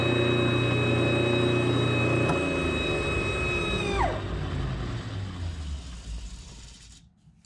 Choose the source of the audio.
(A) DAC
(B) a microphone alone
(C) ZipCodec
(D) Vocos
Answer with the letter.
B